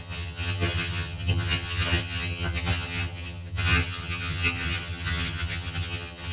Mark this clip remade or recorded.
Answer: remade